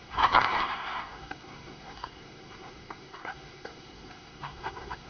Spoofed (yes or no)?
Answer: yes